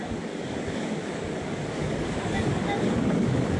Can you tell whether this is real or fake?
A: fake